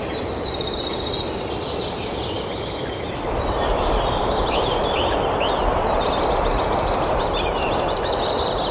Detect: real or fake real